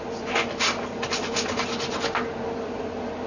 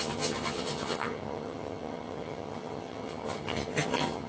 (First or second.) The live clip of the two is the first